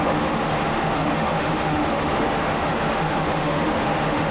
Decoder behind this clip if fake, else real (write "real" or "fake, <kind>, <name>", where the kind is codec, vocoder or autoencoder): fake, autoencoder, DAC-VAE